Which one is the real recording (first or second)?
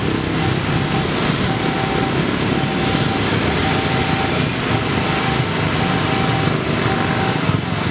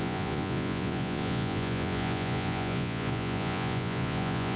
first